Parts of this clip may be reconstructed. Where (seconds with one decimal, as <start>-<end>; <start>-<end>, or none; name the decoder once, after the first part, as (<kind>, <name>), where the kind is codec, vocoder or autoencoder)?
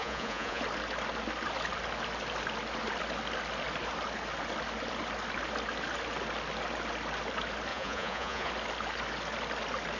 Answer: 0.0-0.6 (vocoder, Vocos); 7.7-8.5